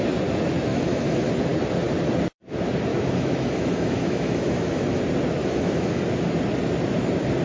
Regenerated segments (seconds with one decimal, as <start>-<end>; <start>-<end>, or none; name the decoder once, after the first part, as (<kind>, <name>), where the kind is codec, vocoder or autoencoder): 0.7-1.3 (autoencoder, DAC-VAE); 2.9-5.0; 5.4-6.0